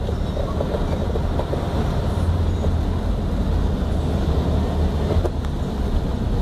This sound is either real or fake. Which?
real